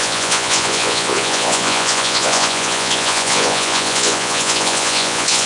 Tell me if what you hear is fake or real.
fake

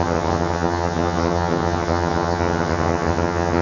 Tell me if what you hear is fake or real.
fake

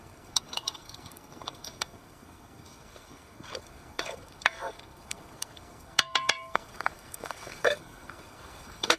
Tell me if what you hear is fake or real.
fake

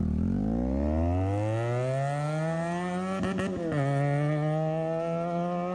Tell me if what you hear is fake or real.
real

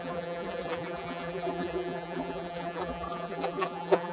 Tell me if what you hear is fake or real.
fake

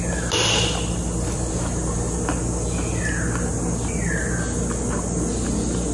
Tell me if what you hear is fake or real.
real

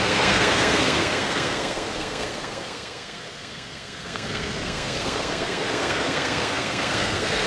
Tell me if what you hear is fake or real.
fake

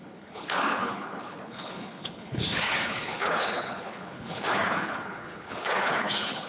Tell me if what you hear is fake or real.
fake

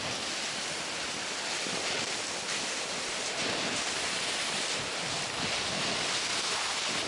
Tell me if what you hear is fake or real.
real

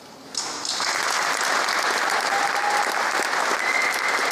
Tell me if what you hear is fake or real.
real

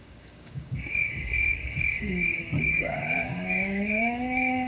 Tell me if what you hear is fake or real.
fake